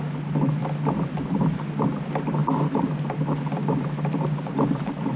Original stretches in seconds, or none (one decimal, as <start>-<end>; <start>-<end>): 0.0-5.2